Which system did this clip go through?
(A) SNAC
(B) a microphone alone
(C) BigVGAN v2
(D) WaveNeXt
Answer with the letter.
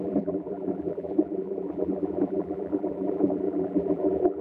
C